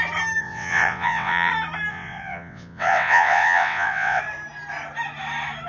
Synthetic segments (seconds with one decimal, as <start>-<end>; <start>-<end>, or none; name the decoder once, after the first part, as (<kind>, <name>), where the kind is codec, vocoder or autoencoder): 0.4-1.5 (vocoder, WaveNeXt); 1.9-4.2

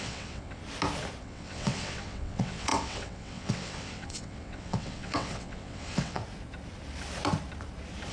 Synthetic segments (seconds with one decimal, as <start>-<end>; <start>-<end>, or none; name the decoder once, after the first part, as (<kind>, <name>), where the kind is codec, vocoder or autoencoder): 0.0-0.6 (vocoder, WaveNeXt); 1.2-6.2

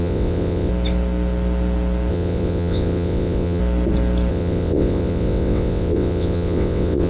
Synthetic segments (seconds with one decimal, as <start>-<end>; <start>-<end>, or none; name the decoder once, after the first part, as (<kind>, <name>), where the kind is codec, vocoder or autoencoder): 0.0-0.7 (vocoder, WaveNeXt); 2.1-3.6; 4.3-7.1

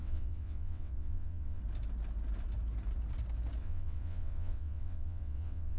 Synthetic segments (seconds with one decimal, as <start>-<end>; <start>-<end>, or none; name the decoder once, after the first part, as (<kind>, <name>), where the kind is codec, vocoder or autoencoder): 0.0-1.6 (vocoder, WaveNeXt); 3.6-5.8

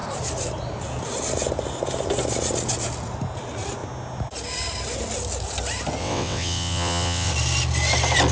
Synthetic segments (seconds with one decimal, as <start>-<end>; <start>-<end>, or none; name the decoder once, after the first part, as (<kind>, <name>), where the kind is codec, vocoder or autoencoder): 6.0-7.3 (vocoder, WaveNeXt)

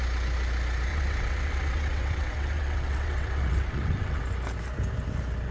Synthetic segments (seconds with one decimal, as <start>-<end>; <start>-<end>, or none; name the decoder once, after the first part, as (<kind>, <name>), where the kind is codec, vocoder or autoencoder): 0.9-4.2 (vocoder, WaveNeXt)

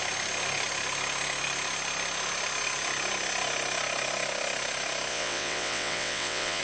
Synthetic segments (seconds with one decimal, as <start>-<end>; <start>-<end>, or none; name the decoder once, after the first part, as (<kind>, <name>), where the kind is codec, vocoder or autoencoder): 5.1-6.6 (vocoder, WaveNeXt)

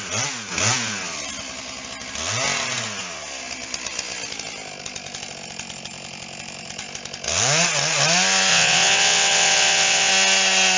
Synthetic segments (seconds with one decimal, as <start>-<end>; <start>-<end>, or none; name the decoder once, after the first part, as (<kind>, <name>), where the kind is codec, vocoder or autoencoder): 8.5-10.1 (vocoder, WaveNeXt)